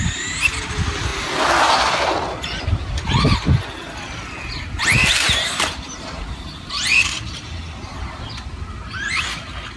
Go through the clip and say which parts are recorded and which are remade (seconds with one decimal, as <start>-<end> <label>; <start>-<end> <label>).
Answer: 0.0-5.2 recorded; 5.2-6.7 remade; 6.7-9.8 recorded